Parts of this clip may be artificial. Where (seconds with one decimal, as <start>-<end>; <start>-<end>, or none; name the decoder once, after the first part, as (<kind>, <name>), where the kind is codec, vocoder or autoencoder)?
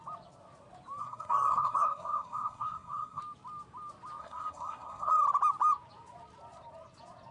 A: 1.0-3.2 (codec, SNAC); 4.2-5.1